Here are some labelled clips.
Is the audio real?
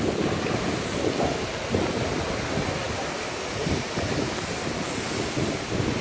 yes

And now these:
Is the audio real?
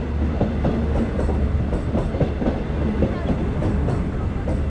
yes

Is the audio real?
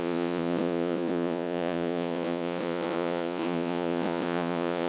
no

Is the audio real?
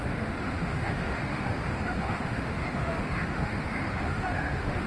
no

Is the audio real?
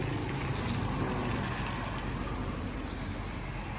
yes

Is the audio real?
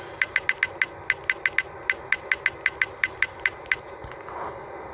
yes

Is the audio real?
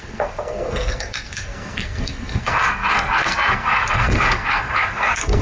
no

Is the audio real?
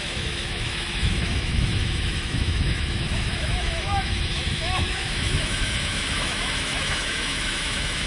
no